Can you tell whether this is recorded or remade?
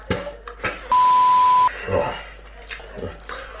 recorded